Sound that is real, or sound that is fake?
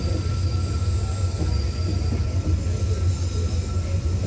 real